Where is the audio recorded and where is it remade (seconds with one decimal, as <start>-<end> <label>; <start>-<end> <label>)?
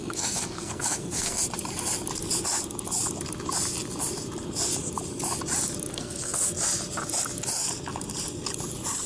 0.0-1.4 remade; 1.4-5.9 recorded; 5.9-6.4 remade; 6.4-9.1 recorded